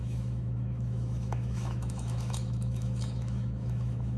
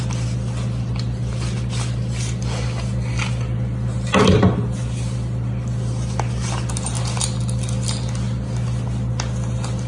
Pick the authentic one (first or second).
second